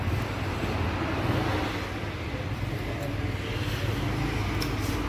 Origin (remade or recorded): recorded